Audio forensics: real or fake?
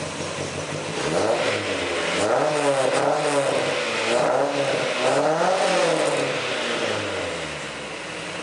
real